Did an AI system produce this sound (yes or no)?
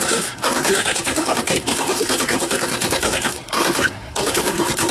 yes